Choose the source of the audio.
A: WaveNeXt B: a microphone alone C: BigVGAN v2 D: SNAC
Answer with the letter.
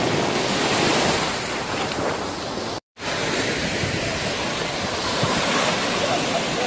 C